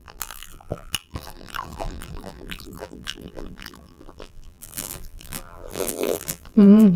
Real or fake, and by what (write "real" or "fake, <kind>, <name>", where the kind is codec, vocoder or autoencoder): fake, vocoder, BigVGAN v2